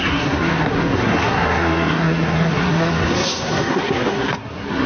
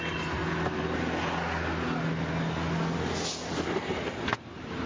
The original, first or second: second